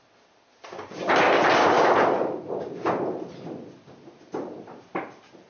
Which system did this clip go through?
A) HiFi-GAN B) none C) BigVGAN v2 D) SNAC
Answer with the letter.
B